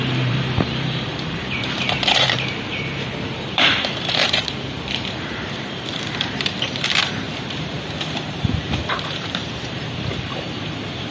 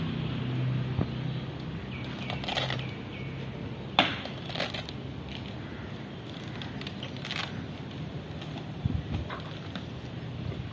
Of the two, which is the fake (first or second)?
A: first